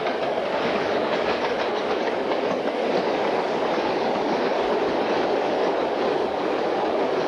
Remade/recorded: remade